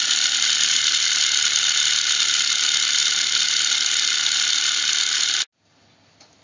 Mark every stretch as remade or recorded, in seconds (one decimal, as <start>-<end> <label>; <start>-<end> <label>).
0.0-6.4 recorded